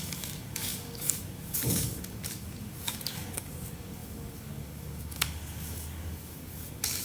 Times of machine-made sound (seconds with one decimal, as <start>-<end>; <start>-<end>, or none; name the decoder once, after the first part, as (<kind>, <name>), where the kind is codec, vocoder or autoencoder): 0.0-7.0 (codec, DAC)